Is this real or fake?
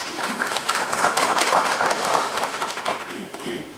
fake